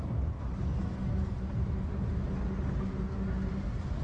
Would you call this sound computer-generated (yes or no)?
no